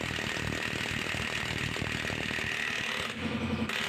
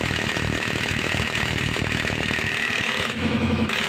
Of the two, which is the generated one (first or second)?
second